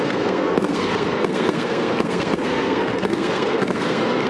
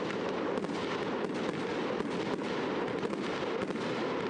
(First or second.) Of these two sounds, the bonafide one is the second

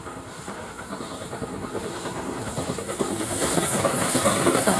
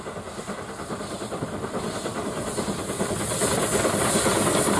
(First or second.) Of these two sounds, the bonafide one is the second